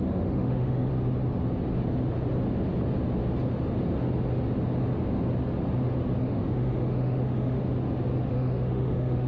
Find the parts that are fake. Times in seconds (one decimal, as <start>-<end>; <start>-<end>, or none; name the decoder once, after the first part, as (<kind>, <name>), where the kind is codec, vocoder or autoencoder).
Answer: 0.0-0.9 (autoencoder, DAC-VAE); 6.2-7.6; 8.3-9.3

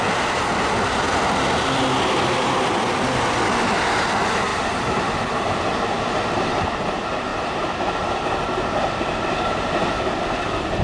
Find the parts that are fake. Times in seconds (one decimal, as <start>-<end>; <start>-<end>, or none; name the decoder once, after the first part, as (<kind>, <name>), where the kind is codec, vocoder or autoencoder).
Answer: none

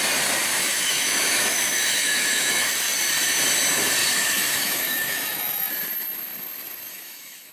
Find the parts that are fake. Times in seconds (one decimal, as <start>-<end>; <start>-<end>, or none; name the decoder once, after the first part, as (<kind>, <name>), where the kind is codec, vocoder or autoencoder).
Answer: 0.5-2.7 (autoencoder, DAC-VAE); 4.0-5.7; 6.9-7.5

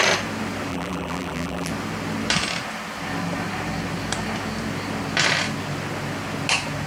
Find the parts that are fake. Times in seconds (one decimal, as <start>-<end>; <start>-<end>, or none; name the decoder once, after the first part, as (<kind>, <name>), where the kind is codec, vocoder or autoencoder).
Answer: 0.7-1.7 (vocoder, BigVGAN v2)

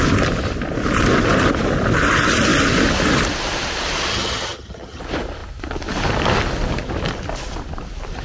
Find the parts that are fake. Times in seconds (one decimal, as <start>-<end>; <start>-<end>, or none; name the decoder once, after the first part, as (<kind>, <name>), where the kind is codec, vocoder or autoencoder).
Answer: 4.1-5.0 (vocoder, HiFi-GAN)

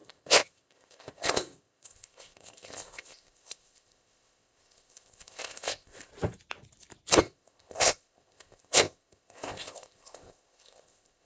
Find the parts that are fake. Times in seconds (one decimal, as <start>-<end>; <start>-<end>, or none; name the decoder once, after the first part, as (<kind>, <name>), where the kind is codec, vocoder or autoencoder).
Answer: 0.0-6.1 (codec, ZipCodec); 7.2-11.3

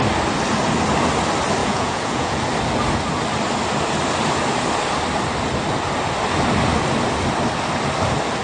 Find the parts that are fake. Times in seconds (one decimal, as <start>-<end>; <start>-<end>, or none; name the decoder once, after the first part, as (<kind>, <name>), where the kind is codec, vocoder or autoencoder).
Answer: 1.6-2.4 (vocoder, Vocos)

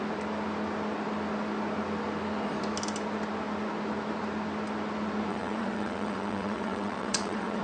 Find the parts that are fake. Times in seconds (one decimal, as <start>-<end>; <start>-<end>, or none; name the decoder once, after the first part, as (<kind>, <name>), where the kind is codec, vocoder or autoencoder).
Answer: 5.3-7.6 (vocoder, WaveNeXt)